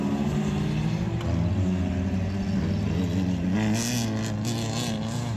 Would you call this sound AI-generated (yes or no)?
no